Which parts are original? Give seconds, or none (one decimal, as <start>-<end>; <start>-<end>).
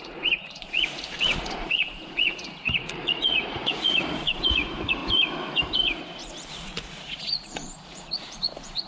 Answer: 5.0-6.5